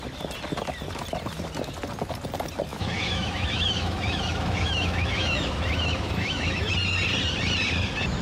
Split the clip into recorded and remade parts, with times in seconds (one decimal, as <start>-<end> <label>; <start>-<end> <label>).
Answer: 0.0-2.7 recorded; 2.7-6.7 remade; 6.7-8.2 recorded